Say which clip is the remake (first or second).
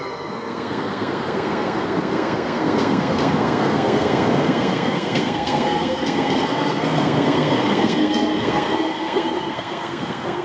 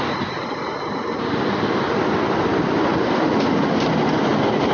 first